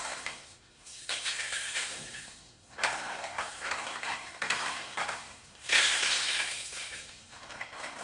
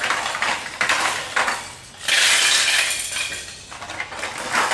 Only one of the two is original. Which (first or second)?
second